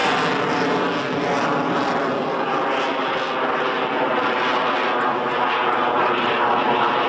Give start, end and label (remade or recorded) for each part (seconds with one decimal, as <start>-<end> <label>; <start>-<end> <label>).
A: 0.0-7.1 recorded